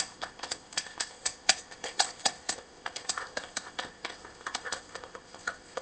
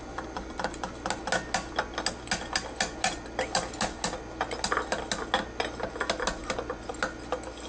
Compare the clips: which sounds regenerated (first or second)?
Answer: first